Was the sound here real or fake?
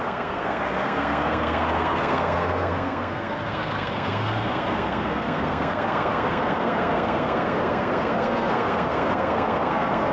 fake